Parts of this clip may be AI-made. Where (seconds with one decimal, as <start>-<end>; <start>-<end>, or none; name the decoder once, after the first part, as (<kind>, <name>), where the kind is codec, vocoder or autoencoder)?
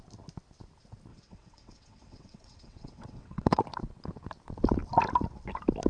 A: 1.1-3.6 (vocoder, WaveNeXt)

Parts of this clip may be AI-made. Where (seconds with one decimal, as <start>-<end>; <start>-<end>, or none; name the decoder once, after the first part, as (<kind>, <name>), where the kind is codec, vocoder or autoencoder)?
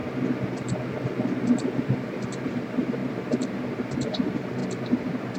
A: 1.8-5.4 (vocoder, BigVGAN v2)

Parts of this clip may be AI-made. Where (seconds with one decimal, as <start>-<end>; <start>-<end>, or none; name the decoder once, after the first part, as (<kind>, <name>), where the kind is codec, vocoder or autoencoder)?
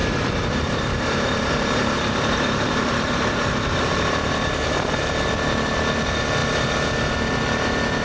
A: 0.0-4.3 (vocoder, BigVGAN v2)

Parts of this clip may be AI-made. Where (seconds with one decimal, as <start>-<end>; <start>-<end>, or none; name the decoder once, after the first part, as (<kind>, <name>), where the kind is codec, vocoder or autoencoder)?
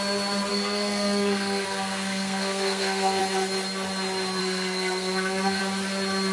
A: 0.5-3.2 (codec, SNAC); 4.4-5.6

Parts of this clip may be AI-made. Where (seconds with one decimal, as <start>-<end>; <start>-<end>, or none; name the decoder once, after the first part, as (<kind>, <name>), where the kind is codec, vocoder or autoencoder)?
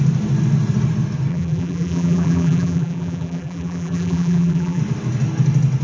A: 1.3-4.8 (vocoder, BigVGAN v2)